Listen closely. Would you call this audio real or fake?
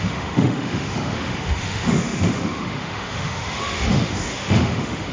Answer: fake